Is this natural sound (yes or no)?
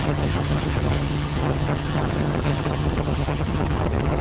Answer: no